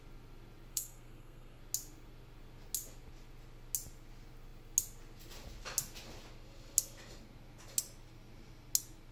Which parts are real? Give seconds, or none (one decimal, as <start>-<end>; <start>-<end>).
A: 0.0-0.7; 1.6-9.1